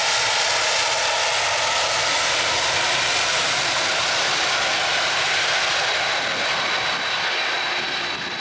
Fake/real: real